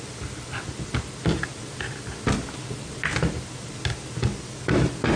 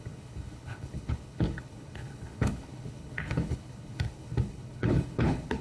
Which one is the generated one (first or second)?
second